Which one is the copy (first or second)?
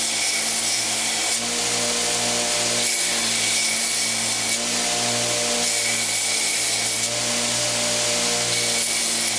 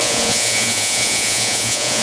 second